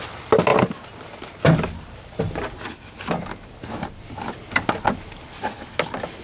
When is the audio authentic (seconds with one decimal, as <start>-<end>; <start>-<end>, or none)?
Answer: 0.0-6.2